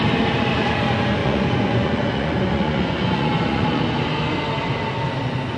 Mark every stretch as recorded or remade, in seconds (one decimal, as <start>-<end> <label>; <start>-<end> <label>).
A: 0.0-1.2 recorded; 1.2-3.8 remade; 3.8-5.6 recorded